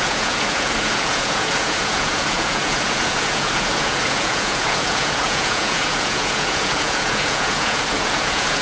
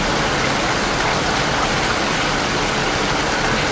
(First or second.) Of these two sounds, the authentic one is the second